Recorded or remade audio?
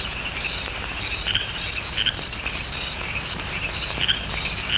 remade